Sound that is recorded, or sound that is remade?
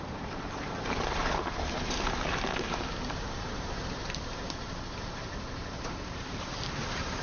remade